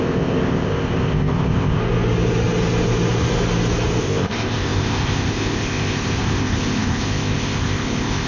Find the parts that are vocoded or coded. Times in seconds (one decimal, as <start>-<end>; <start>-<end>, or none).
0.0-1.8; 4.0-8.3